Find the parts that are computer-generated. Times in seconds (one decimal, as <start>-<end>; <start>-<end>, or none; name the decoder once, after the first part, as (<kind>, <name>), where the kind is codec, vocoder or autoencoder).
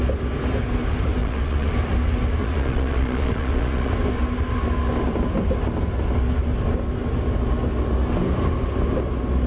1.2-1.7 (vocoder, Vocos); 2.4-3.9